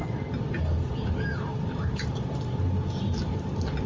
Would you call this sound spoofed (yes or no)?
no